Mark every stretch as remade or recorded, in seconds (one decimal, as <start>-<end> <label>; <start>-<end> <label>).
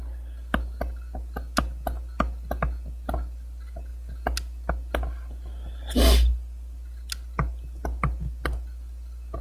0.0-9.4 recorded